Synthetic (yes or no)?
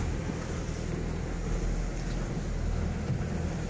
no